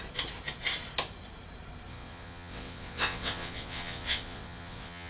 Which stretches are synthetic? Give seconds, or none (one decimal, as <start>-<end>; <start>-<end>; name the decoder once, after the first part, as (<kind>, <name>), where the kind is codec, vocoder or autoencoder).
1.9-5.1 (vocoder, WaveNeXt)